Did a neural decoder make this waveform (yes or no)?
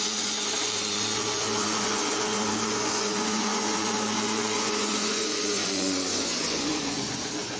yes